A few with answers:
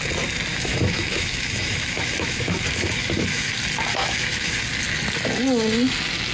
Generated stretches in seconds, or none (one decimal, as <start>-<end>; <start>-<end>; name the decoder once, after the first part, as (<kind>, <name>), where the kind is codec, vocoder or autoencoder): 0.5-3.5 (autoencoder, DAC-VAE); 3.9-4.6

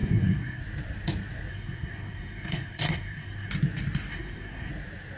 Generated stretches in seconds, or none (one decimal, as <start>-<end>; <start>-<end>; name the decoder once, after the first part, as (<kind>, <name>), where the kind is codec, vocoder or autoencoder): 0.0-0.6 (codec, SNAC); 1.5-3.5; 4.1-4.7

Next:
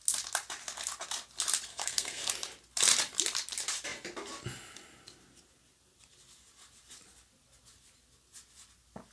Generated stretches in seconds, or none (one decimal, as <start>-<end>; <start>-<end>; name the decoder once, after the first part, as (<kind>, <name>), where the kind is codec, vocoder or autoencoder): 1.7-2.3 (codec, SNAC)

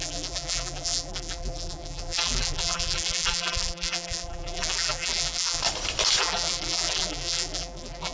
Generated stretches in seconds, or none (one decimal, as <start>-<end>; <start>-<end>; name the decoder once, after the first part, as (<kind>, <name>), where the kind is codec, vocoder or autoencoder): 0.0-5.6 (vocoder, BigVGAN v2); 6.2-8.1

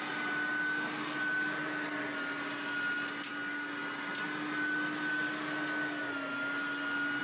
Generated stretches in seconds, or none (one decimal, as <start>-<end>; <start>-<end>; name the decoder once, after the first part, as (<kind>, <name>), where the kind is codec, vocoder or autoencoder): none